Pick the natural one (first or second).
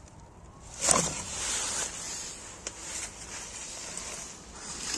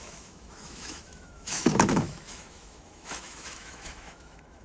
first